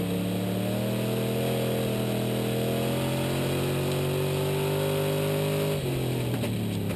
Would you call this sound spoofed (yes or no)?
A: no